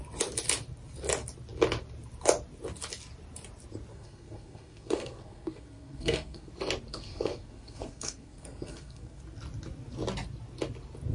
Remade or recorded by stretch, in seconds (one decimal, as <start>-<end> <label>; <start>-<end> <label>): 0.0-3.9 recorded; 3.9-6.5 remade; 6.5-6.9 recorded; 6.9-9.2 remade; 9.2-11.1 recorded